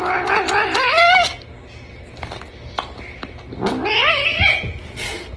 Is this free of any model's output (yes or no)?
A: yes